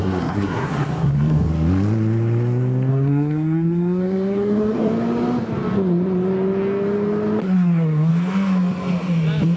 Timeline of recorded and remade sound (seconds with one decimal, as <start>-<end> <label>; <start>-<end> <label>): 0.0-1.5 remade; 1.5-2.9 recorded; 2.9-4.9 remade; 4.9-7.4 recorded; 7.4-8.1 remade; 8.1-9.6 recorded